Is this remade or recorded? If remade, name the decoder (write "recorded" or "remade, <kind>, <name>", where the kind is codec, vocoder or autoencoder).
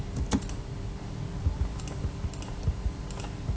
recorded